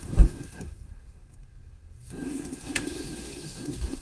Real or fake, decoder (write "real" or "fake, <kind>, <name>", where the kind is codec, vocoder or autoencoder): fake, codec, SNAC